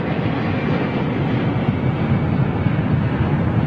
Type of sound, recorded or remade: recorded